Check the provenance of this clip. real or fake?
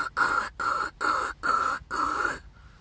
real